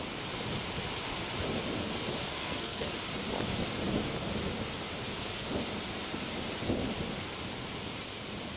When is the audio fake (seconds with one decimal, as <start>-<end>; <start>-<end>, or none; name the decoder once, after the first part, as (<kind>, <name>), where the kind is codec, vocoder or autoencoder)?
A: 2.3-2.9 (codec, SNAC)